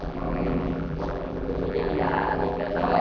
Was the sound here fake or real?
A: fake